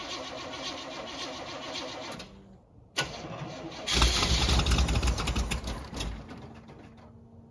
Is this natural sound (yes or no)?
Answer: yes